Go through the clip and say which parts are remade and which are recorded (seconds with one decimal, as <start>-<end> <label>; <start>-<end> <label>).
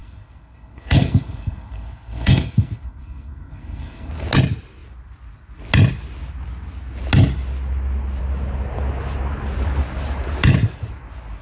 0.0-4.1 remade; 4.1-11.4 recorded